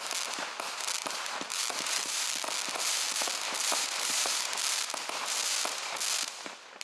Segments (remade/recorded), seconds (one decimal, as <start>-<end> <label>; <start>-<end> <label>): 0.0-1.5 recorded; 1.5-2.2 remade; 2.2-3.6 recorded; 3.6-4.6 remade; 4.6-6.8 recorded

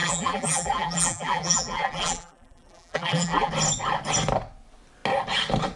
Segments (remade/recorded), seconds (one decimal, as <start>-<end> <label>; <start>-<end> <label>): 0.0-3.5 remade; 3.5-5.8 recorded

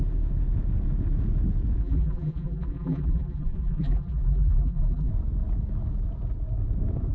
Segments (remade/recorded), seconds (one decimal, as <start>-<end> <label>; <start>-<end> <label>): 0.0-1.8 recorded; 1.8-5.1 remade; 5.1-7.1 recorded

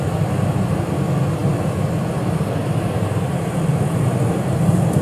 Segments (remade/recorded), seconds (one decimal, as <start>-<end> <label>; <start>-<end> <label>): 0.0-2.6 recorded; 2.6-4.6 remade; 4.6-5.0 recorded

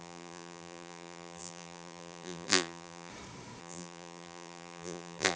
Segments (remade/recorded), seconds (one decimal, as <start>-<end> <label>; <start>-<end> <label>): 0.0-3.1 remade; 3.1-3.6 recorded; 3.6-5.4 remade

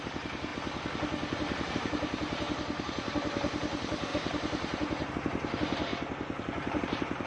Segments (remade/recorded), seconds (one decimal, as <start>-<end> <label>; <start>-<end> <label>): 0.0-0.5 remade; 0.5-1.7 recorded; 1.7-5.9 remade; 5.9-6.8 recorded; 6.8-7.3 remade

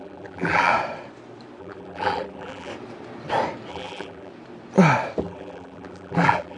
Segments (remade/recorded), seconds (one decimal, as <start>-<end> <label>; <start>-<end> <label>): 0.0-0.7 remade; 0.7-1.6 recorded; 1.6-2.7 remade; 2.7-3.7 recorded; 3.7-4.3 remade; 4.3-5.2 recorded; 5.2-6.6 remade

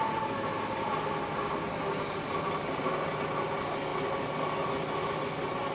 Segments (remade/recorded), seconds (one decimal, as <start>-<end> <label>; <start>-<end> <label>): 0.0-5.7 recorded